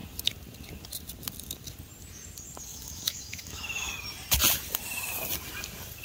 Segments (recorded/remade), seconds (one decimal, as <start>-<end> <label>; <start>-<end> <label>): 0.0-2.7 recorded; 2.7-3.9 remade; 3.9-6.0 recorded